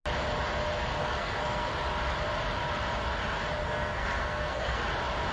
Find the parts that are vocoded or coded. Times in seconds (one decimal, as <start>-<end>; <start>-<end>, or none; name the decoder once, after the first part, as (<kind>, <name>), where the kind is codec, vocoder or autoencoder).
1.0-1.7 (codec, SNAC); 3.6-4.8